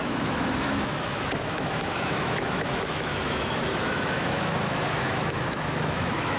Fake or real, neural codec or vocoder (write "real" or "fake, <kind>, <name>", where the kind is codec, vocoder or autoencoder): fake, autoencoder, DAC-VAE